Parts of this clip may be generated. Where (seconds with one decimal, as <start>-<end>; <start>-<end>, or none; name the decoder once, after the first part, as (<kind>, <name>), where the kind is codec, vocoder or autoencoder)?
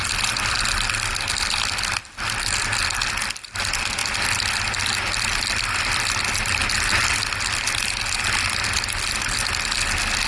none